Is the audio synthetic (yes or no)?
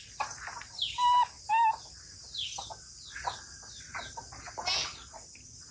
no